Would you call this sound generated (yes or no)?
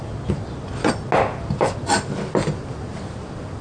no